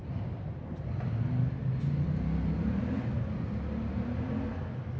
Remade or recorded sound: recorded